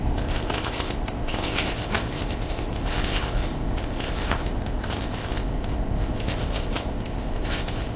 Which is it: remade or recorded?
remade